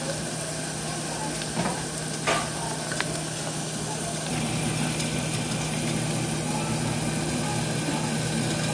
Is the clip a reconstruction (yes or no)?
no